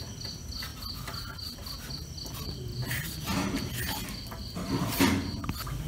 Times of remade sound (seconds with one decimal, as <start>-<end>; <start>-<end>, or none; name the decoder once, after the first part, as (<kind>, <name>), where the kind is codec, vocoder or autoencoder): none